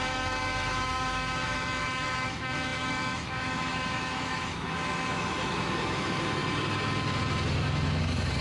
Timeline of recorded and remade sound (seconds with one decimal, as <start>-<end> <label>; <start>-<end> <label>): 0.0-6.4 remade; 6.4-8.0 recorded; 8.0-8.4 remade